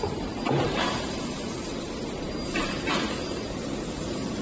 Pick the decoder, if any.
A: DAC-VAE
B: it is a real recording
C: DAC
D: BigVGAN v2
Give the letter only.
D